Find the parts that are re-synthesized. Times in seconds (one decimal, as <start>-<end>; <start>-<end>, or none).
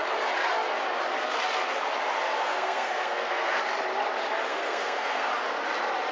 2.4-3.6; 4.5-5.3